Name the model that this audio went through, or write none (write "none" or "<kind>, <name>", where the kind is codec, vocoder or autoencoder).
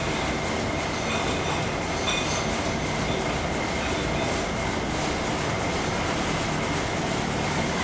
none